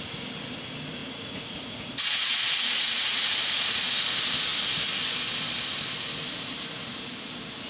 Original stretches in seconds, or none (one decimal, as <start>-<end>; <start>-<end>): 0.0-1.0; 3.9-7.7